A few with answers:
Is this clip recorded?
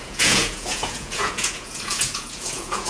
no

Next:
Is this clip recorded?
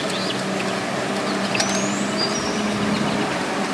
yes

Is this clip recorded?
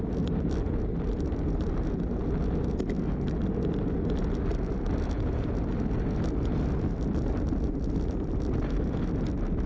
yes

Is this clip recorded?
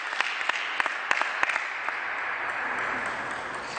yes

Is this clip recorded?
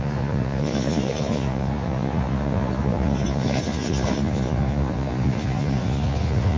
no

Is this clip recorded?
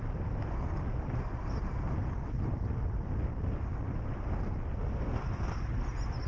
yes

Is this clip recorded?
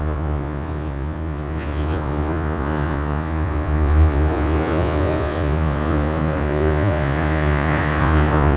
no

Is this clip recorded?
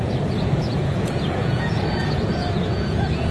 no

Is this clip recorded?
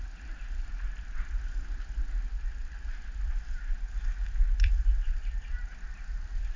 yes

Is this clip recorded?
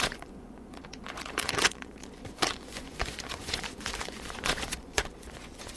no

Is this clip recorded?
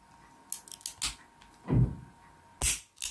yes